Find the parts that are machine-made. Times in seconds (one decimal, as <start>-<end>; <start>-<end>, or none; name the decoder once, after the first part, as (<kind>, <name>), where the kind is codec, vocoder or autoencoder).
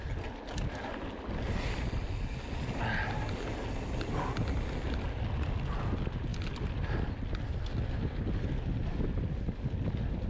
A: none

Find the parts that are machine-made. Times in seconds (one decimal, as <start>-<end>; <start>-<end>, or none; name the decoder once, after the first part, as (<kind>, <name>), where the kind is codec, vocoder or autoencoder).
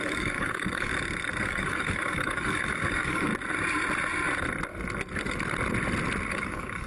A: 0.0-0.9 (codec, DAC); 1.4-3.3; 6.3-6.9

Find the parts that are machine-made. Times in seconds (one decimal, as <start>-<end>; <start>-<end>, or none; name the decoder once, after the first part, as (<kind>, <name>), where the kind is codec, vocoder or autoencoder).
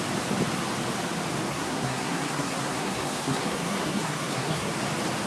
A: 1.5-4.7 (codec, SNAC)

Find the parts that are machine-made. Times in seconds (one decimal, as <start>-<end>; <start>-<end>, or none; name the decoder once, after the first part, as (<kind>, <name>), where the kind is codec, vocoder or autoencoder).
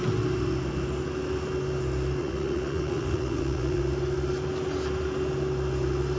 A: 2.2-3.8 (vocoder, Vocos)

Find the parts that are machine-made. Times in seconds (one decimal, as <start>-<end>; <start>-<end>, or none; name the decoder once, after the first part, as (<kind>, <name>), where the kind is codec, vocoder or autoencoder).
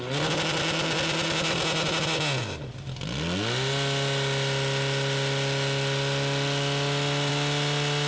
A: none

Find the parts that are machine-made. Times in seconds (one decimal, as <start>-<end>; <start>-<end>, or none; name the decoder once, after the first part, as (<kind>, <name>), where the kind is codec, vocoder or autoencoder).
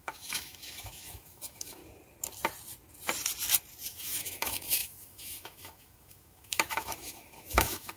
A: 0.0-1.8 (autoencoder, DAC-VAE); 3.9-8.0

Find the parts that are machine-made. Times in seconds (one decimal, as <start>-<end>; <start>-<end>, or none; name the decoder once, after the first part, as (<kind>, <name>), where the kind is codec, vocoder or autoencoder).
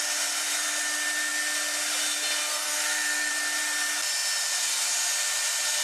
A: 2.5-3.3 (codec, SNAC)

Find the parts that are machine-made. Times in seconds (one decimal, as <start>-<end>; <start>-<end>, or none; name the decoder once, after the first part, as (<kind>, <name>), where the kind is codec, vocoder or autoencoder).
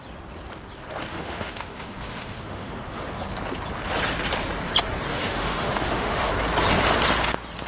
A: 1.1-3.2 (autoencoder, DAC-VAE); 5.1-6.3